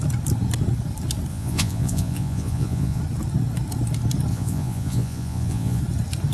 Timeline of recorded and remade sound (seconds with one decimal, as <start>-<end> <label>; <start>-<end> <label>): 0.0-1.3 recorded; 1.3-3.0 remade; 3.0-4.3 recorded; 4.3-5.8 remade; 5.8-6.3 recorded